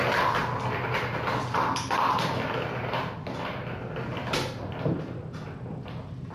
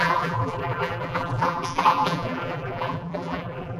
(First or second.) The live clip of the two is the first